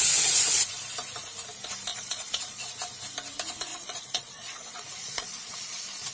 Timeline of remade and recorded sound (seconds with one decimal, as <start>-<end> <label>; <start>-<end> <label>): 0.0-1.9 recorded; 1.9-2.7 remade; 2.7-3.7 recorded; 3.7-6.1 remade